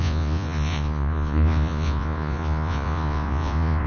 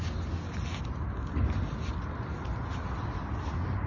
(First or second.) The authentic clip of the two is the second